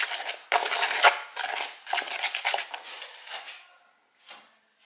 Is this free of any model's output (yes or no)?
yes